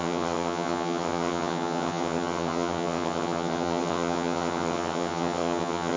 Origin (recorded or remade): remade